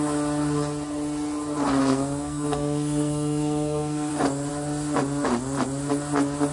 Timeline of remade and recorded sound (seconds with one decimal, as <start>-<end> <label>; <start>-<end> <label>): 0.0-1.8 recorded; 1.8-4.1 remade; 4.1-6.5 recorded

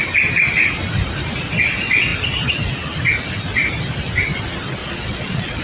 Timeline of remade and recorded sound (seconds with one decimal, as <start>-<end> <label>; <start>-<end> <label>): 0.0-4.8 recorded; 4.8-5.6 remade

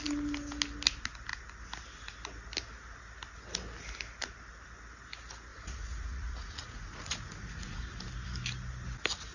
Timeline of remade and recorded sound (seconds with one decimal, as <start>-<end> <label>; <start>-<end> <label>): 0.0-5.5 recorded; 5.5-7.8 remade; 7.8-9.3 recorded